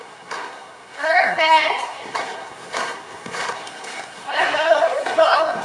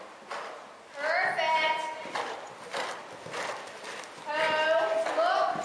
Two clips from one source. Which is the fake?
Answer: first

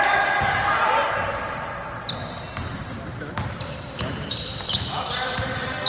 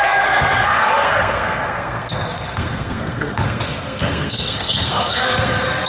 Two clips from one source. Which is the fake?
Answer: second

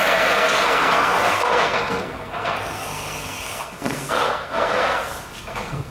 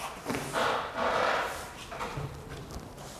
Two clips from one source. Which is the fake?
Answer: first